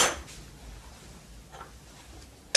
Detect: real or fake real